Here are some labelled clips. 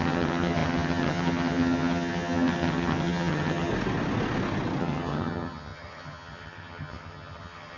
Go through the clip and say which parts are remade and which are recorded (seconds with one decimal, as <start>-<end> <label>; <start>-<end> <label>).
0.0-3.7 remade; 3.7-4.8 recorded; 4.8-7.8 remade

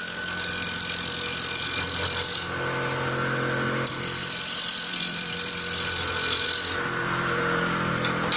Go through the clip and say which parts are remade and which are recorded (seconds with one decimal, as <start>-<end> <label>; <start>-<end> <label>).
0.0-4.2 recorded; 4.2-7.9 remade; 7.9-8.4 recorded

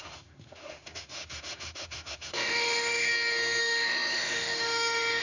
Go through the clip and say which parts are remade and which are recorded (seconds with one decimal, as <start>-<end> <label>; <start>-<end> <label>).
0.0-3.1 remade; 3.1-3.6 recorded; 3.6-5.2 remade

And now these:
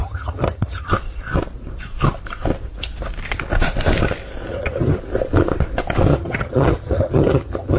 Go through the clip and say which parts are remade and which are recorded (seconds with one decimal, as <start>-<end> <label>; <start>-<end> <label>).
0.0-0.9 remade; 0.9-4.5 recorded; 4.5-5.0 remade; 5.0-6.1 recorded; 6.1-7.8 remade